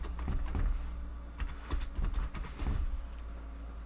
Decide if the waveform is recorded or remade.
recorded